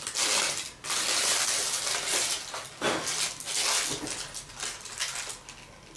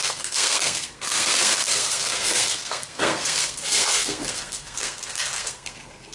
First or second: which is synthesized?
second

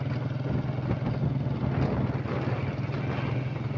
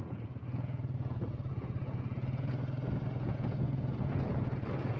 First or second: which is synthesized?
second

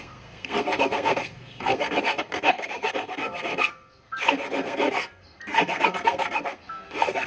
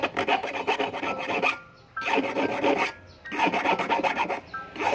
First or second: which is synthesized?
first